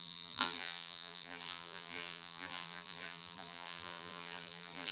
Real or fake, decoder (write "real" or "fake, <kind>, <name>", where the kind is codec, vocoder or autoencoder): fake, vocoder, BigVGAN v2